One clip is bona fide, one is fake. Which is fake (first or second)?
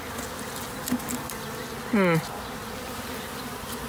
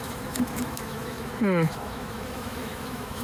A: second